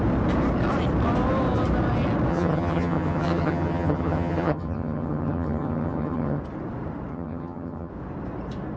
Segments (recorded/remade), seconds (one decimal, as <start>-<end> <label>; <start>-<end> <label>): 0.0-2.3 recorded; 2.3-6.4 remade; 6.4-7.1 recorded; 7.1-7.9 remade; 7.9-8.8 recorded